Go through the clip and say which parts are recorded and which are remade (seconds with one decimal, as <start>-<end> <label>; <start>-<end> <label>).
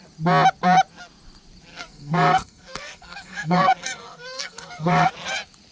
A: 0.0-1.7 recorded; 1.7-5.1 remade; 5.1-5.7 recorded